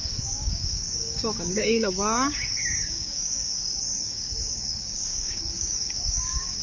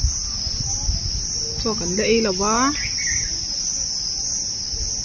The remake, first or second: first